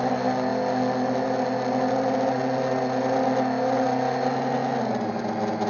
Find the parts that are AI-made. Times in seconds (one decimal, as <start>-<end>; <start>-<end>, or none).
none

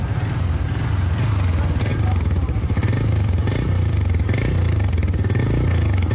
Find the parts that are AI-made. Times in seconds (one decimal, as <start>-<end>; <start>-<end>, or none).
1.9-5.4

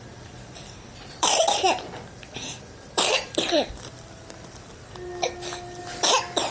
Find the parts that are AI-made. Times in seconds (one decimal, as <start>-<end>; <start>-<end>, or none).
0.0-6.5

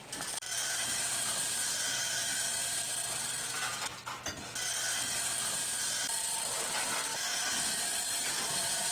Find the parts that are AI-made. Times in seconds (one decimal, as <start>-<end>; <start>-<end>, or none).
0.0-2.9; 6.5-7.1; 7.8-8.9

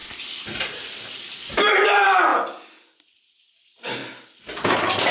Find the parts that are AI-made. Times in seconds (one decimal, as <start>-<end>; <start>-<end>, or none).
0.0-2.3; 3.6-4.0

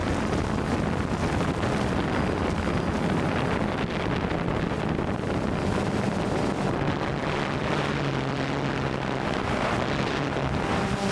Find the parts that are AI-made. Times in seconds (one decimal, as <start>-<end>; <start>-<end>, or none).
7.2-8.0

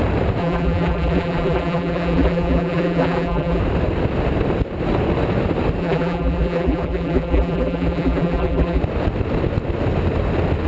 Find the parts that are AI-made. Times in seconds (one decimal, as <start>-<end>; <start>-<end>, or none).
0.4-3.6; 5.8-8.8

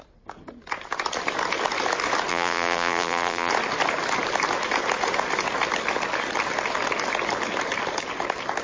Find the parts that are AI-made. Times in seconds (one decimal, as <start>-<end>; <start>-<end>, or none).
2.3-3.5